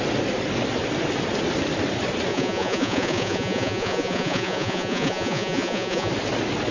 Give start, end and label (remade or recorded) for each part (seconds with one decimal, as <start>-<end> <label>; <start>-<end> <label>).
0.0-2.3 recorded; 2.3-6.1 remade; 6.1-6.7 recorded